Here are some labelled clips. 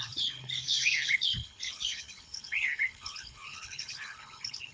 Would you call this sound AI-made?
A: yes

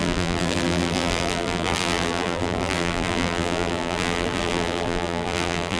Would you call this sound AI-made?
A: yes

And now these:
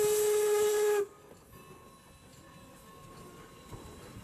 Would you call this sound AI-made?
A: no